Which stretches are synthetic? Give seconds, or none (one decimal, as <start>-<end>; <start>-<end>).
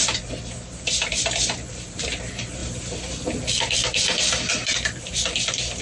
none